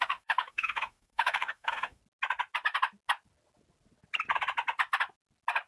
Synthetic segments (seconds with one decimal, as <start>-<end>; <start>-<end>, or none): 0.0-2.0